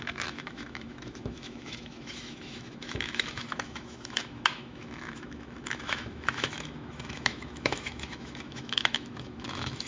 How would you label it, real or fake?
fake